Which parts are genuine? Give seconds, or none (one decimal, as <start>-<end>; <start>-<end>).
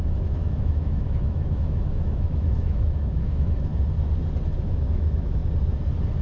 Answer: 3.7-4.6; 5.4-6.2